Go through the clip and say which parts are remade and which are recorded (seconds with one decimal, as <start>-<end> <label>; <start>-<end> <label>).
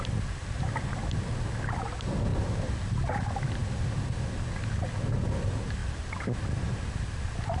0.0-7.6 recorded